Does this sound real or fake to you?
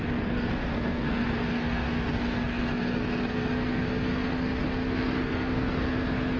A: fake